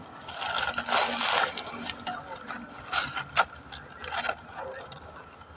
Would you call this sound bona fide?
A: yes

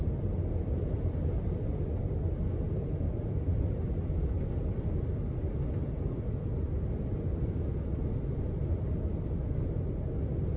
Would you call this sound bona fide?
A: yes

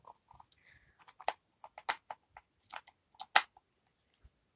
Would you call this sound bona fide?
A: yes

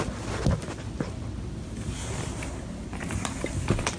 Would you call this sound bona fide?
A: yes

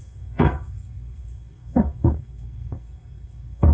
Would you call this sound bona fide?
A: no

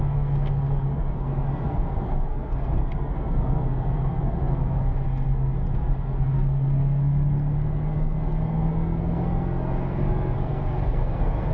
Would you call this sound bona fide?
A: no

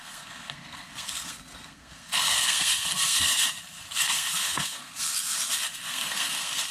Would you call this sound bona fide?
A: no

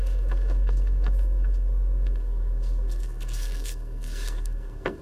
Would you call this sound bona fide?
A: no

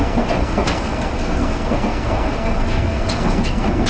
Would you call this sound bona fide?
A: no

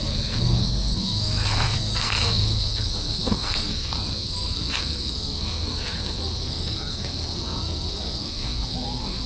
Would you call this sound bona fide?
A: no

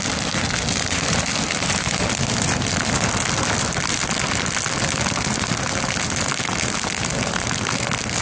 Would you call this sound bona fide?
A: yes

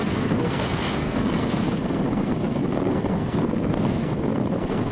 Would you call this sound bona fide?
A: no